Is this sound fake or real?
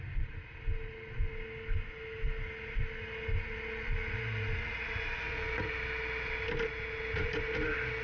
real